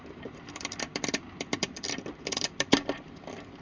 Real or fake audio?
fake